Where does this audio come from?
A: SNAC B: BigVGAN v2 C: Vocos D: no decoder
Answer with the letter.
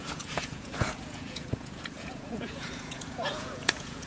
C